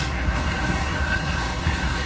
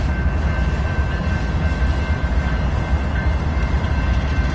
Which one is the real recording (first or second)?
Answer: second